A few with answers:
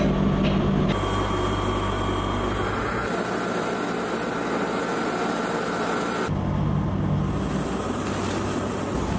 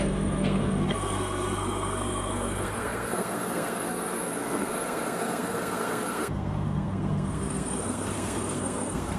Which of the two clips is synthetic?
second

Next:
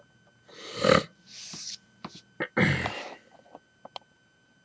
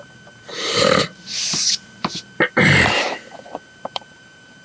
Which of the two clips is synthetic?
second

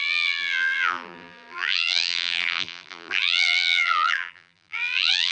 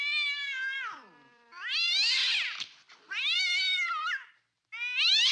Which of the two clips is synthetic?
first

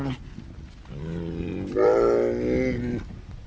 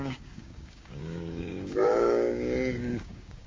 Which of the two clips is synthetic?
second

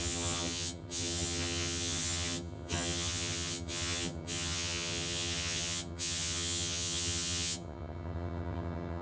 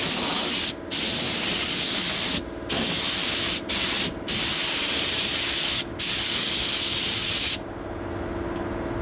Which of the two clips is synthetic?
first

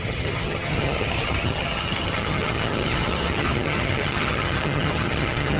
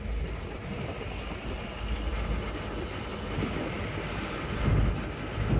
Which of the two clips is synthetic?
first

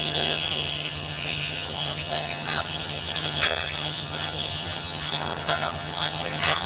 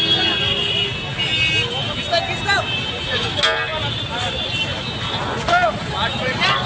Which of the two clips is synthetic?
first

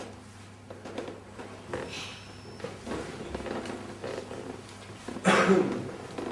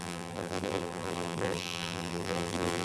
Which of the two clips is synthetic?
second